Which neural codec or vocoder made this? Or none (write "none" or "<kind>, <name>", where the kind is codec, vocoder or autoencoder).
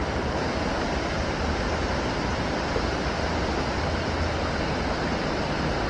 none